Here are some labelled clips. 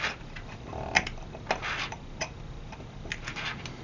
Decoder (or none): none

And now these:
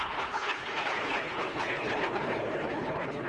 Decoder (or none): codec, HILCodec